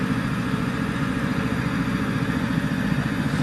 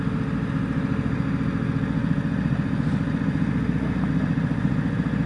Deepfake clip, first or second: first